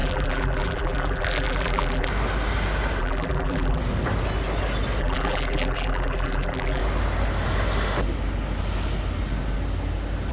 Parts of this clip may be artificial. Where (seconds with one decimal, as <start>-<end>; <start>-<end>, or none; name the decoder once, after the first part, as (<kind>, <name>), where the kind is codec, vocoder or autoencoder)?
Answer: 0.0-2.1 (vocoder, BigVGAN v2); 3.0-3.8; 5.0-6.8

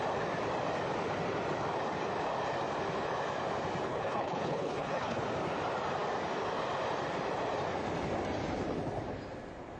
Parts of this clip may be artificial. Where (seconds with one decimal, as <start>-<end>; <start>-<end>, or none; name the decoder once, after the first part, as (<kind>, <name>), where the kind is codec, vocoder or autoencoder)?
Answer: 3.9-5.2 (codec, HILCodec)

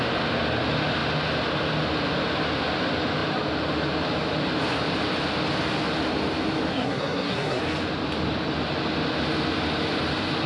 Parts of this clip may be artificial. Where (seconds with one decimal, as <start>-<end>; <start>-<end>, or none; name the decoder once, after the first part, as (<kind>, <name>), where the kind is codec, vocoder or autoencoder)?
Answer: 6.7-7.6 (codec, SNAC)